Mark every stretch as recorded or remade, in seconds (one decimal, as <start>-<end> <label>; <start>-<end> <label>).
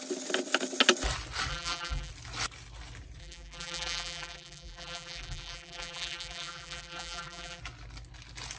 0.0-1.5 recorded; 1.5-2.1 remade; 2.1-3.2 recorded; 3.2-7.6 remade; 7.6-8.6 recorded